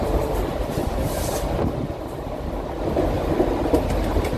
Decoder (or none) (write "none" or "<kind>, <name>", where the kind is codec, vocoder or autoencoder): none